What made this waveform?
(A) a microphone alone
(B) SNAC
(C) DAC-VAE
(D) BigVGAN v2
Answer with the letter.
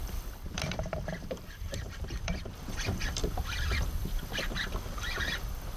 D